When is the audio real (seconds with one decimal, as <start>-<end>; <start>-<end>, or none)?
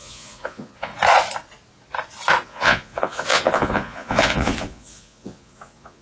0.9-2.4